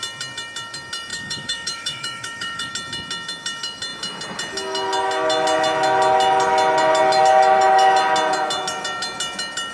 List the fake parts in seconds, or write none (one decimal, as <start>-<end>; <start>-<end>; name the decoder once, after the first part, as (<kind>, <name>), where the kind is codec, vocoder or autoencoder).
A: 1.1-2.7 (autoencoder, DAC-VAE)